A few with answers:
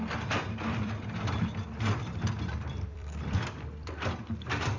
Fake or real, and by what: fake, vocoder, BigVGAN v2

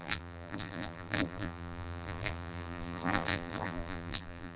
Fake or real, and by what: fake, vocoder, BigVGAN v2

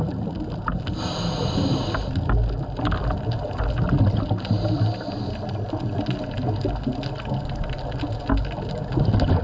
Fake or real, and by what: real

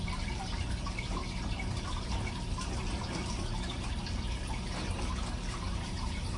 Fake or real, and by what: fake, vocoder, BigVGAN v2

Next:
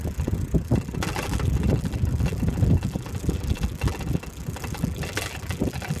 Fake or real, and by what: fake, vocoder, BigVGAN v2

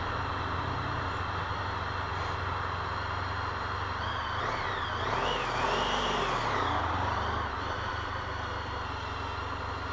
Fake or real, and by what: real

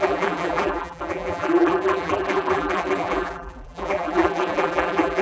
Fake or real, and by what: fake, vocoder, BigVGAN v2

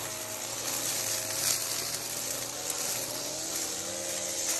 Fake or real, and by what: real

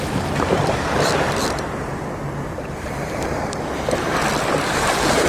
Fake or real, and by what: fake, vocoder, BigVGAN v2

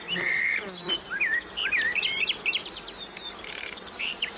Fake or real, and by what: fake, vocoder, BigVGAN v2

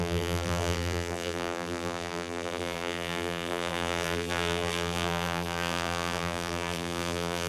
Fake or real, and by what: fake, vocoder, BigVGAN v2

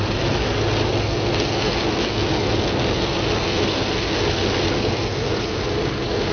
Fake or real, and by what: real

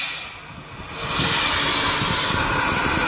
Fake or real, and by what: real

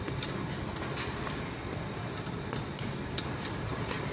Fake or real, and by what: real